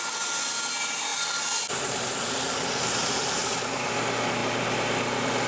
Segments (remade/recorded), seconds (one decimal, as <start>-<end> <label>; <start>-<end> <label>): 0.0-1.1 recorded; 1.1-1.7 remade; 1.7-3.4 recorded; 3.4-3.9 remade; 3.9-5.5 recorded